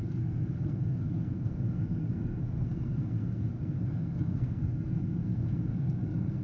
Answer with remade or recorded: remade